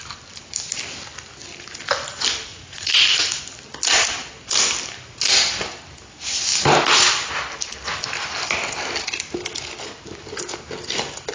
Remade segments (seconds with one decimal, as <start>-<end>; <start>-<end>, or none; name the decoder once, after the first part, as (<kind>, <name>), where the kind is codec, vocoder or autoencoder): 2.5-3.4 (vocoder, Vocos)